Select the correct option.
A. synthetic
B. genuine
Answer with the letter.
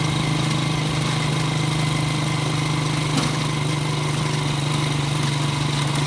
B